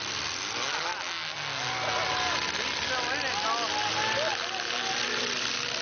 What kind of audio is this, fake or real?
real